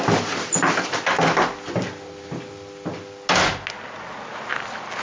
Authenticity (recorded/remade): recorded